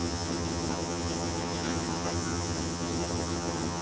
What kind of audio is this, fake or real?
fake